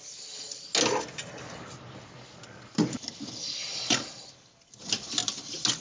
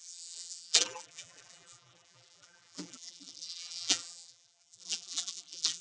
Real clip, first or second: first